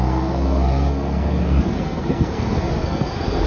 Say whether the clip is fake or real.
fake